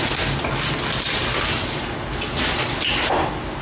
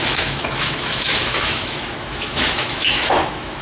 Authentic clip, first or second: first